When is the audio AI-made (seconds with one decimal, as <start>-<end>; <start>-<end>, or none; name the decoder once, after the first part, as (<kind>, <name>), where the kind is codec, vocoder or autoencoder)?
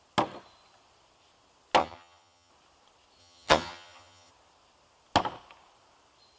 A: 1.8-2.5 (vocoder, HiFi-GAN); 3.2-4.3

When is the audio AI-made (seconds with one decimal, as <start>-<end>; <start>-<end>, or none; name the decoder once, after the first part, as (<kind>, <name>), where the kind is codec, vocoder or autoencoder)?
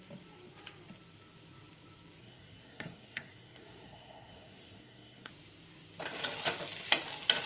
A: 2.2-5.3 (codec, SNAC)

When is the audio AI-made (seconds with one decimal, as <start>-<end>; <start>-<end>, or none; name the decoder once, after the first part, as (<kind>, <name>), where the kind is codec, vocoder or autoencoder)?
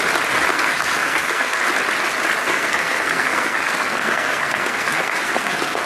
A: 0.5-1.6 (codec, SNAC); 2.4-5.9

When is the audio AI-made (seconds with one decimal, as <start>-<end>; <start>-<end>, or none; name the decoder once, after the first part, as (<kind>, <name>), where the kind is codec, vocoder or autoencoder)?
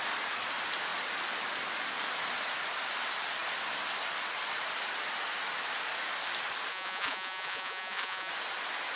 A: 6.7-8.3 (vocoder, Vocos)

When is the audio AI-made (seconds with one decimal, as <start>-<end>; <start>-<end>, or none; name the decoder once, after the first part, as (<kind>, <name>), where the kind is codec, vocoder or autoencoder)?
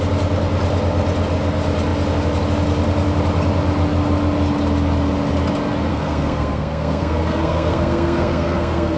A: 5.9-9.0 (codec, SNAC)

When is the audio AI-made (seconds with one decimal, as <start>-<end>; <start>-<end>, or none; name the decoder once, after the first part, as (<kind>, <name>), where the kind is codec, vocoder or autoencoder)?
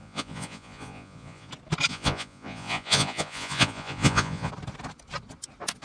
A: 0.0-1.5 (vocoder, Vocos); 1.9-4.5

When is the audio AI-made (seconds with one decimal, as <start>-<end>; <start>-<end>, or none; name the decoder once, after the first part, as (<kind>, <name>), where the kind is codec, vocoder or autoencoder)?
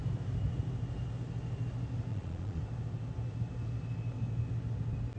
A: 2.1-2.6 (vocoder, Vocos)